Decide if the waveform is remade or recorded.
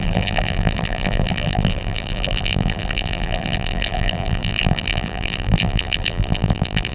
remade